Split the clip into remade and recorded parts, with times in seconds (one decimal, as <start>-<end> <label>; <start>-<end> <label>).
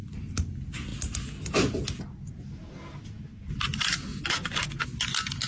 0.0-5.5 recorded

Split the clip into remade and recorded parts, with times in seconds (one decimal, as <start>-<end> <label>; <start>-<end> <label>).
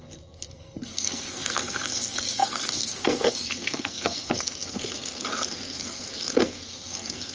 0.0-7.3 remade